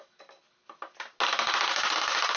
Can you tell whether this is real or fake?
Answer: real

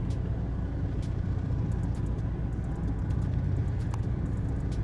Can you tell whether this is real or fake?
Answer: real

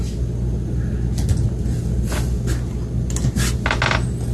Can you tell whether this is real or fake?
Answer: real